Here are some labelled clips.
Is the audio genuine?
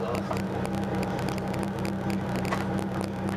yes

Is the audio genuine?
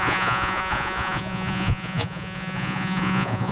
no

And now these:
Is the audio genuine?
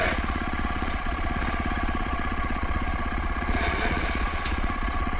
no